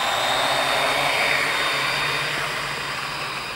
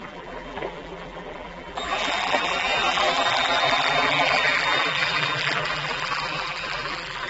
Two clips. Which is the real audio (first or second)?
first